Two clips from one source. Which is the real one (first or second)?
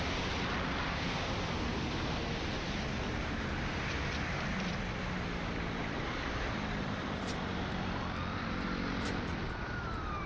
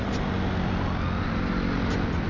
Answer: second